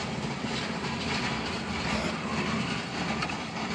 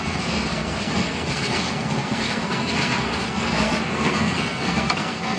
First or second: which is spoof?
second